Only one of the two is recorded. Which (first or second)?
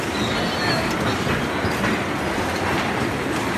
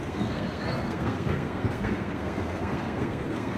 first